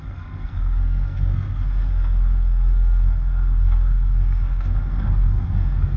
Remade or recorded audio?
remade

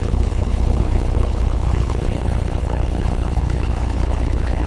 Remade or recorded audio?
remade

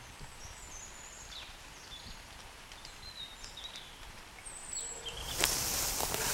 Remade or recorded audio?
remade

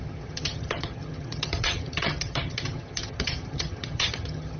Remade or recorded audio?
remade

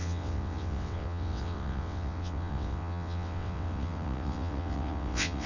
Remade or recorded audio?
remade